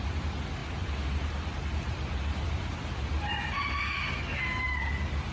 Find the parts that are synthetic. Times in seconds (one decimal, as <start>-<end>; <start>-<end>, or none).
0.6-3.8